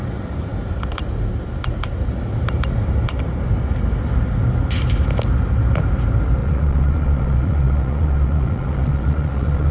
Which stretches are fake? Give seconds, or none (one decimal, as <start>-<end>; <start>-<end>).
6.4-9.7